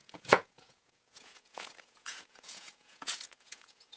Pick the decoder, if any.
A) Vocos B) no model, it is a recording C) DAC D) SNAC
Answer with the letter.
A